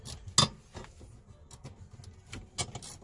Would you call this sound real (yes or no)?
yes